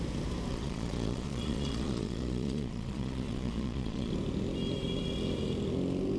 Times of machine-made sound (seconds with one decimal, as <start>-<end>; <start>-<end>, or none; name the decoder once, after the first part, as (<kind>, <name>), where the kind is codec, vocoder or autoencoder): 0.5-4.1 (vocoder, Vocos)